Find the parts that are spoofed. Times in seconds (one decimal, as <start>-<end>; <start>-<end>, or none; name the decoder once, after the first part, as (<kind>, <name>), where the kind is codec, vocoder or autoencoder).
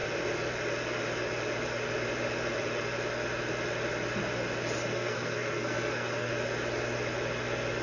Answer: 4.9-6.3 (codec, SNAC)